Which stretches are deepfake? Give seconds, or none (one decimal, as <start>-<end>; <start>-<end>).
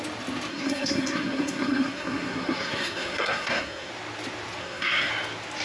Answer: 0.5-3.9; 4.6-5.1